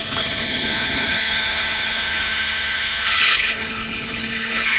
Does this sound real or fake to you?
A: fake